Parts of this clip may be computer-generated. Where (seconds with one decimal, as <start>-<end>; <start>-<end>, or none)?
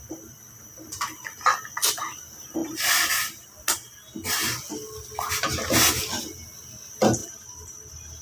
none